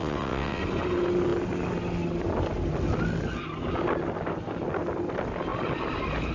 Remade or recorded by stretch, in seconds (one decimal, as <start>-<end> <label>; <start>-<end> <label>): 0.0-0.6 remade; 0.6-6.3 recorded